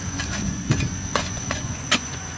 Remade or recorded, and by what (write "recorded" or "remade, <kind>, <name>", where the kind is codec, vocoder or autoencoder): remade, vocoder, Vocos